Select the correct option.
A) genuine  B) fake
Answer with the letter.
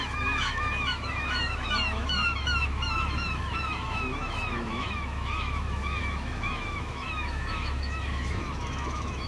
B